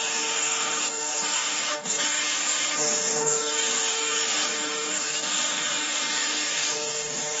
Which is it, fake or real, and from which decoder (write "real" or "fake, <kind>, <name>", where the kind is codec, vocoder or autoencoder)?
fake, codec, DAC